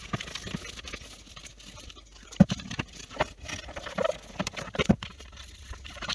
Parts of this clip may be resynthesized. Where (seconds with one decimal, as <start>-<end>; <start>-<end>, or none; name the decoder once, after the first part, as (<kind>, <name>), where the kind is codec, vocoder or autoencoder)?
1.5-3.2 (vocoder, BigVGAN v2); 3.6-6.1